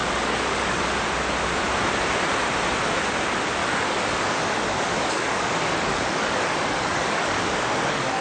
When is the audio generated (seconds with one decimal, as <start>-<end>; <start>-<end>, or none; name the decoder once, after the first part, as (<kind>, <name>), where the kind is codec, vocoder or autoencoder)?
0.0-0.8 (codec, DAC); 3.6-8.2